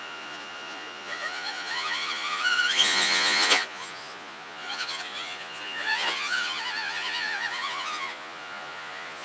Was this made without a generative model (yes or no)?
no